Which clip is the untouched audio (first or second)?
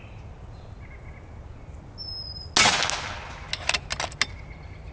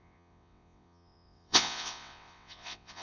first